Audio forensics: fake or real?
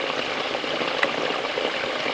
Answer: real